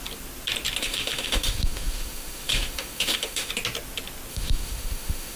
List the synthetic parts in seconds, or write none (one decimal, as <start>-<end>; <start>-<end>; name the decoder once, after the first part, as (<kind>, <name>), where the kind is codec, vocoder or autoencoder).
0.8-3.5 (autoencoder, DAC-VAE); 4.3-5.4